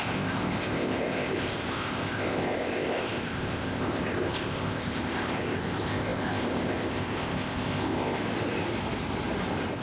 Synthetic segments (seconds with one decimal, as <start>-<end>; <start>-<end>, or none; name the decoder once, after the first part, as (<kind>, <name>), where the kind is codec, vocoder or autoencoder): 0.0-8.2 (codec, ZipCodec)